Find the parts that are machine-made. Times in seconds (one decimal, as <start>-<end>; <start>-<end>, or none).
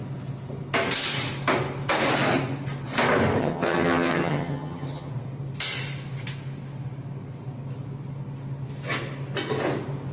3.4-5.1